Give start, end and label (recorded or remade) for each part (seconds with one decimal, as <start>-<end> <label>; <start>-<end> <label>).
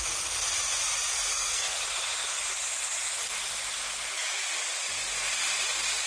0.0-1.3 recorded; 1.3-1.8 remade; 1.8-6.1 recorded